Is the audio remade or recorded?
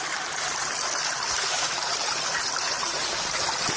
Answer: recorded